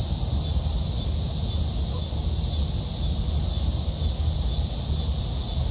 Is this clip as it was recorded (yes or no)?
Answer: yes